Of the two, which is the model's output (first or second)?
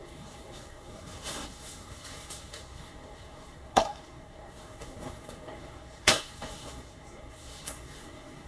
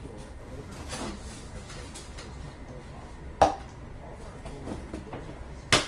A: first